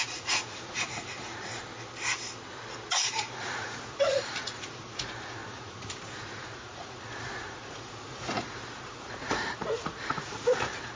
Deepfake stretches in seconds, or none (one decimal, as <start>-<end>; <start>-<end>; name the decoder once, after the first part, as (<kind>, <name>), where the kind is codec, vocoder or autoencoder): 0.0-1.5 (vocoder, Vocos); 3.0-11.0